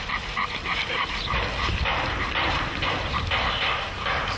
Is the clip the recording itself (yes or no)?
yes